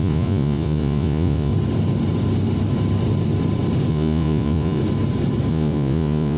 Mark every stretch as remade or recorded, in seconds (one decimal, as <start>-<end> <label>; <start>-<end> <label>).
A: 0.0-1.5 remade; 1.5-3.9 recorded; 3.9-4.8 remade; 4.8-5.5 recorded; 5.5-6.4 remade

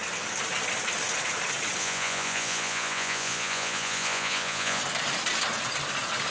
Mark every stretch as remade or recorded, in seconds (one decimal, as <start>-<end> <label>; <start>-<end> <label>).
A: 0.0-1.8 recorded; 1.8-4.8 remade; 4.8-6.3 recorded

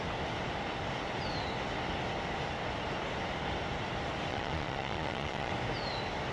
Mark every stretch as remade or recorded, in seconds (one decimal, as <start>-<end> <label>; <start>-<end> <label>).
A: 0.0-4.3 recorded; 4.3-5.5 remade; 5.5-6.3 recorded

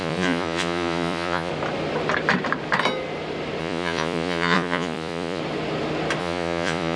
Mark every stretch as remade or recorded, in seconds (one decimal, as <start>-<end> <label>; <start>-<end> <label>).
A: 0.0-1.5 remade; 1.5-3.6 recorded; 3.6-5.4 remade; 5.4-6.2 recorded; 6.2-7.0 remade

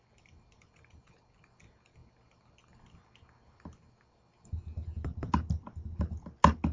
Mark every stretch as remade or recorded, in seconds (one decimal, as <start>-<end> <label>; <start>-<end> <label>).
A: 0.0-6.7 recorded

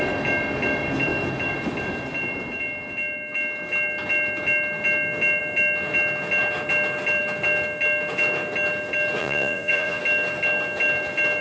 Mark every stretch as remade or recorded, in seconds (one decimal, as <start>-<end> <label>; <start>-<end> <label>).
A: 0.0-9.2 recorded; 9.2-10.0 remade; 10.0-11.4 recorded

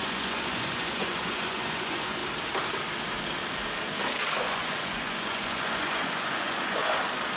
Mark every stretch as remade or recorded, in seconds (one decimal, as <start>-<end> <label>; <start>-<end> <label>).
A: 0.0-2.2 remade; 2.2-4.4 recorded; 4.4-6.8 remade; 6.8-7.4 recorded

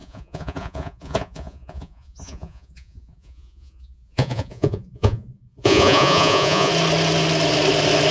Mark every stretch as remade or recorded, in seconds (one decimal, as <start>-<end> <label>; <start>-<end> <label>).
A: 0.0-6.7 remade; 6.7-8.1 recorded